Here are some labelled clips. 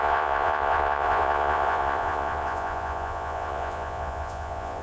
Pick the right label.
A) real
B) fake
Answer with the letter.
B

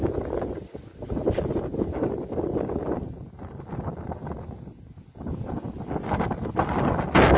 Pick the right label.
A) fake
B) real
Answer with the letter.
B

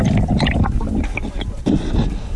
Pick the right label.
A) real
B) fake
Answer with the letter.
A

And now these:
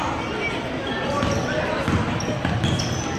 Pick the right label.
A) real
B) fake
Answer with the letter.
A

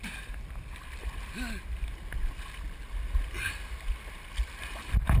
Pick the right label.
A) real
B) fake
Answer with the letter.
A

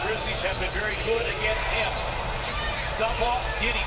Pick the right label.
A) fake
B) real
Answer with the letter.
A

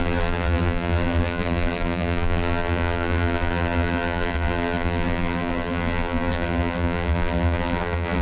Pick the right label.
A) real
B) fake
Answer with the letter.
B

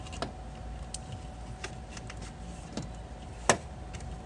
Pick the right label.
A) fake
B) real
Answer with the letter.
B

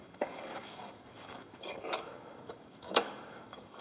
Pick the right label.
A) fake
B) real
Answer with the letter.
A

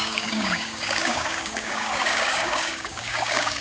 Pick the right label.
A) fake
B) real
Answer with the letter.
A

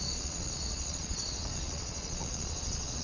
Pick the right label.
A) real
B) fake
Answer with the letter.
B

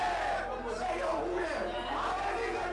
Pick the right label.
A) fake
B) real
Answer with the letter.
B